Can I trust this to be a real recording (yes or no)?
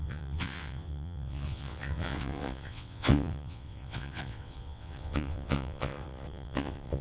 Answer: no